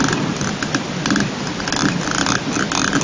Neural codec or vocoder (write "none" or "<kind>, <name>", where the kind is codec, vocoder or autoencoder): none